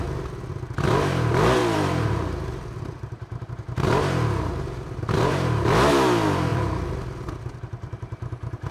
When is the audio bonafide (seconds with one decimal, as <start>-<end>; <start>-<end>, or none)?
0.0-1.6; 3.5-6.5